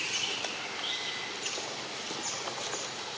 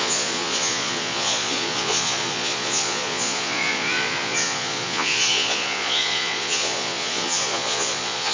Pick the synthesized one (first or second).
second